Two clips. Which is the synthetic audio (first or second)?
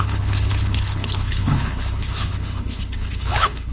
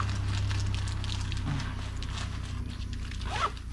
first